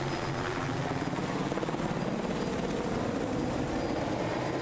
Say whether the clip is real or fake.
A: real